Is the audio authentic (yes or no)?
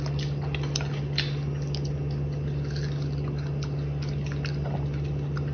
yes